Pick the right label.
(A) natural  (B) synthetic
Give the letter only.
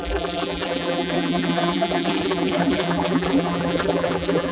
B